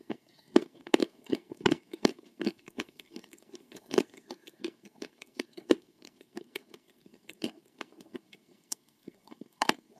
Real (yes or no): no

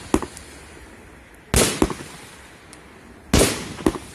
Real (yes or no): yes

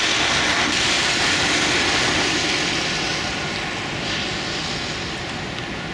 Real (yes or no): yes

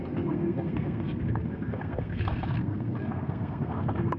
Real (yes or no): no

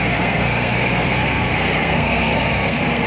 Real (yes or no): no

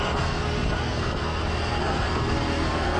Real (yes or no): no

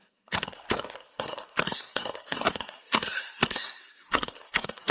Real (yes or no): no